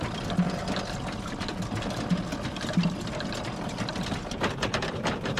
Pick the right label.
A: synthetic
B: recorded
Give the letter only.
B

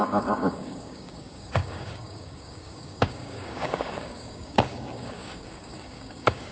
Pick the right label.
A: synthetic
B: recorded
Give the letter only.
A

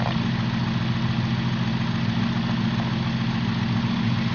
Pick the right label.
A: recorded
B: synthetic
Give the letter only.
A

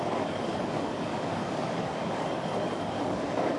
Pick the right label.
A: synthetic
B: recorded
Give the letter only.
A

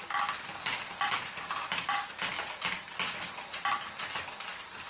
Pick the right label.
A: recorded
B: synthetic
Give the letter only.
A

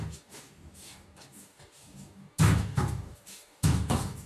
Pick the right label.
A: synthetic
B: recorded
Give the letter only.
A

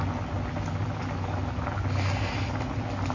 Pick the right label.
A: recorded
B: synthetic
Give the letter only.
A